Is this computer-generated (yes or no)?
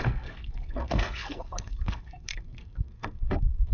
yes